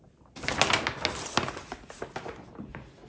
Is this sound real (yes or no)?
yes